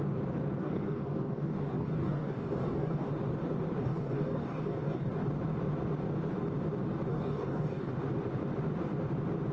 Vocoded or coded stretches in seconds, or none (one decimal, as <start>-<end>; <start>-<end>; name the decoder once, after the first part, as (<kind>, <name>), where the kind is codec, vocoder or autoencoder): 0.6-3.1 (codec, DAC); 3.8-5.1; 7.1-7.9

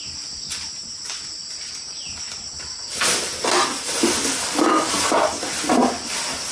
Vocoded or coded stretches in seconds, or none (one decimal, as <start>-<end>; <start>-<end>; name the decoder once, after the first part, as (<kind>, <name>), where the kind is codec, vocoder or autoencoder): 4.4-4.9 (codec, DAC)

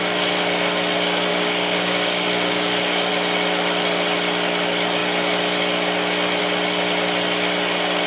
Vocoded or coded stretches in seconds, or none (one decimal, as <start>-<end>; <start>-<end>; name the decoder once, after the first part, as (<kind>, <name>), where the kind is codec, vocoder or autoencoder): 1.3-3.1 (codec, DAC)